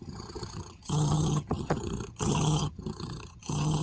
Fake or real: fake